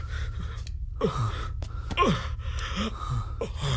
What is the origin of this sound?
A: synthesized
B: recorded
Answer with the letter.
B